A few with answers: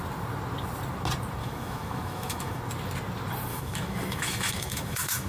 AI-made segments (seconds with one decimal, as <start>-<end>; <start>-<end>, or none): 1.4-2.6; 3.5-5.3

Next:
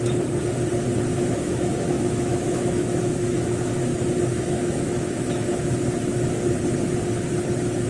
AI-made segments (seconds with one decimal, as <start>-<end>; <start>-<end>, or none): 1.1-3.9; 4.3-5.8

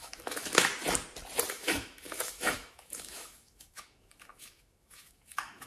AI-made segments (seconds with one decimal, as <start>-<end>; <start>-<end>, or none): 0.0-0.7; 1.5-5.7

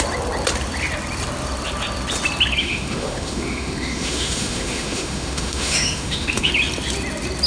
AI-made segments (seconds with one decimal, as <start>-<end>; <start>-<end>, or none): 2.6-6.5

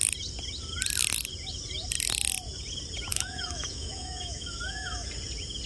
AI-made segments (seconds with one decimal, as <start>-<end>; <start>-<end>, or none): 3.1-5.1

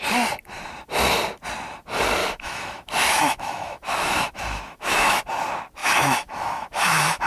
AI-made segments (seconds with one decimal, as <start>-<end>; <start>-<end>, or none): 2.2-5.2; 5.8-7.3